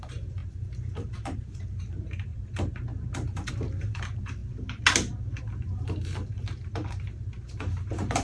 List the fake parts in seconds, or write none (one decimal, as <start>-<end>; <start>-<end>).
0.0-4.4; 5.4-8.2